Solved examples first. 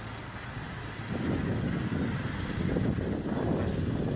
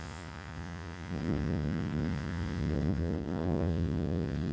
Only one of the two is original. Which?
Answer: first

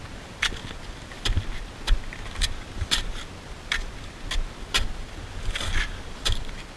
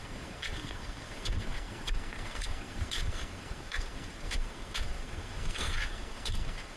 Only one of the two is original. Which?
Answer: first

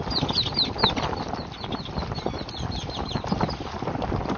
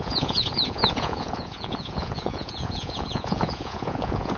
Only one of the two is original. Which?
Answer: first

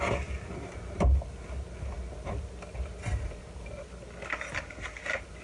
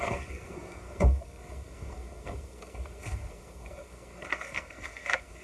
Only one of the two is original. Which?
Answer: first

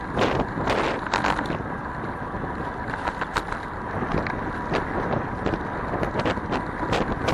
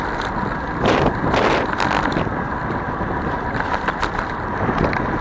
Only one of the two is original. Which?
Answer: first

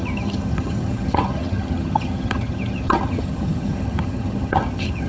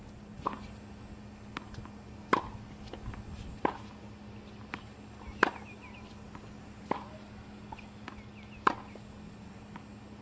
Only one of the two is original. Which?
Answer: second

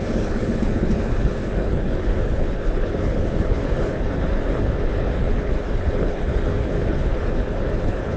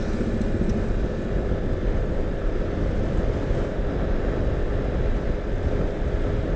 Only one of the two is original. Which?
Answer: second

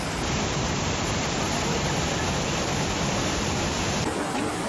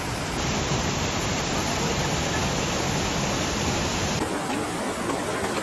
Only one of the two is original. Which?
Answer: second